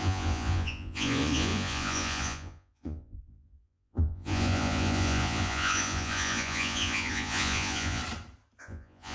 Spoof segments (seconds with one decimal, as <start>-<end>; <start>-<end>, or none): 0.0-8.0; 8.6-9.1